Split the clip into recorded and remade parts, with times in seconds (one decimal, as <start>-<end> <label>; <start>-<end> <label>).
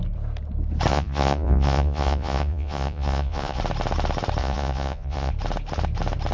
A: 0.0-0.9 recorded; 0.9-3.6 remade; 3.6-4.4 recorded; 4.4-5.3 remade; 5.3-6.3 recorded